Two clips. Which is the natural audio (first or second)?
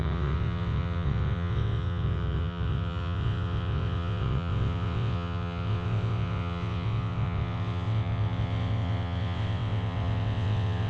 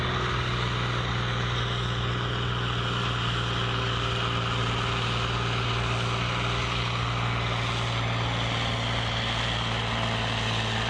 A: second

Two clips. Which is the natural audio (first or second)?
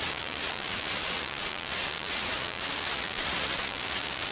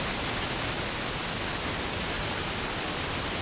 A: second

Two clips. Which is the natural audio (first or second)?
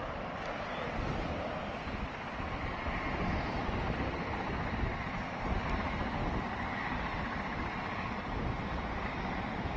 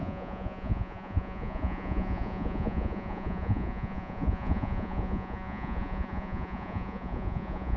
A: first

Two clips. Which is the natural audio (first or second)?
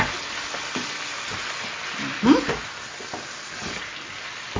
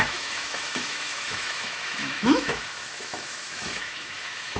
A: first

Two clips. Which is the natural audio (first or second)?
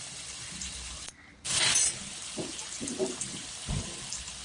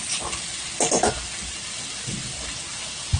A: second